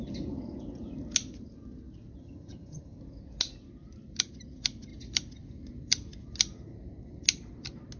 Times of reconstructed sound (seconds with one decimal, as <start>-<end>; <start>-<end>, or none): 2.2-3.0